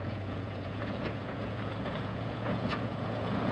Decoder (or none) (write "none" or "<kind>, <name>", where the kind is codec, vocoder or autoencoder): vocoder, Vocos